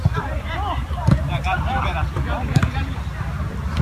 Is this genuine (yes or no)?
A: no